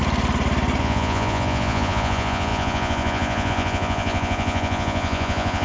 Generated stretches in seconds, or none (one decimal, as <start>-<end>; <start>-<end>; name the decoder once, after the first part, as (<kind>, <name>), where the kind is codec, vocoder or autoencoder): 0.8-5.6 (vocoder, Vocos)